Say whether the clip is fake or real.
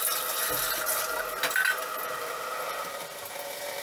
real